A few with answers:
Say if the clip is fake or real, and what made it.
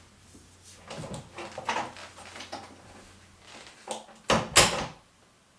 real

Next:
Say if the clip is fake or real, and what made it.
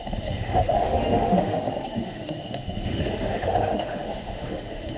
fake, autoencoder, DAC-VAE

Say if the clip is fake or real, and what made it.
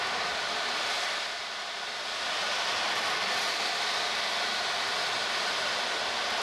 real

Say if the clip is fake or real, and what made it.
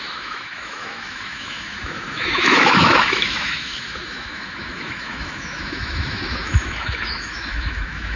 fake, autoencoder, DAC-VAE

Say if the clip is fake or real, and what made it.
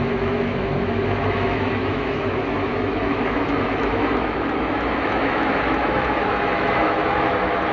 fake, autoencoder, DAC-VAE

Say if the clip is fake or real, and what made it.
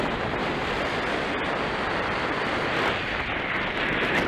real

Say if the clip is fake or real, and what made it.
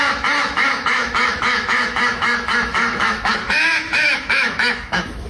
fake, autoencoder, DAC-VAE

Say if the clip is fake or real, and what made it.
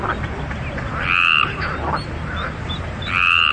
real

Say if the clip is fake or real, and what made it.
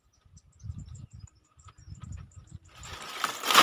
real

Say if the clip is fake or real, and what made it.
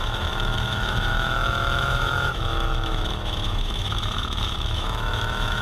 fake, autoencoder, DAC-VAE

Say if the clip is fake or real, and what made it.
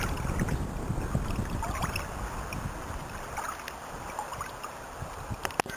real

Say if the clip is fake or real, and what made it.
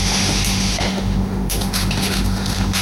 fake, autoencoder, DAC-VAE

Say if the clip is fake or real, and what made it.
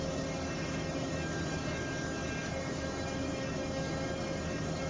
fake, autoencoder, DAC-VAE